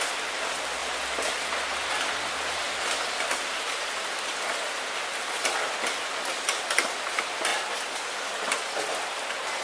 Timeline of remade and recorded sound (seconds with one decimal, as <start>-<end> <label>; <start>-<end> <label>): 0.0-9.6 recorded